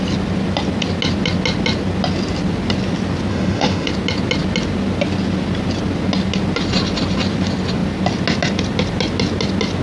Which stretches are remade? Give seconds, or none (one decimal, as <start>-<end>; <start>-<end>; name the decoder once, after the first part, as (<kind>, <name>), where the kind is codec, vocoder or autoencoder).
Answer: 3.3-3.9 (autoencoder, DAC-VAE)

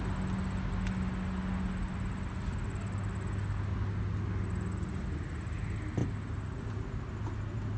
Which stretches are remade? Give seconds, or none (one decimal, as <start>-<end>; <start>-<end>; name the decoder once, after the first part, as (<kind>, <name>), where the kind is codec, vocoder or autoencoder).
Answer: none

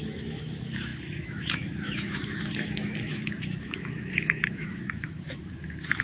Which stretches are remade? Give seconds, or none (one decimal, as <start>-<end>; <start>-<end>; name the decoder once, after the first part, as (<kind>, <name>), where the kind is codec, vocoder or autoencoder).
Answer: 0.0-6.0 (autoencoder, DAC-VAE)

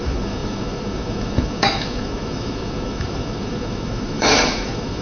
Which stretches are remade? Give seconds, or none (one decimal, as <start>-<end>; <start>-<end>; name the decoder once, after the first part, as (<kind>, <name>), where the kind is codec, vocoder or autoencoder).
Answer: 0.0-5.0 (autoencoder, DAC-VAE)

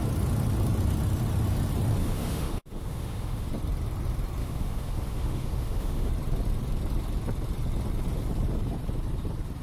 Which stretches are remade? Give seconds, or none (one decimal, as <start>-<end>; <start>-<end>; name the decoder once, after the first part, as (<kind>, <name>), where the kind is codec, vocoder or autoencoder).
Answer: 2.0-3.5 (autoencoder, DAC-VAE); 4.4-6.1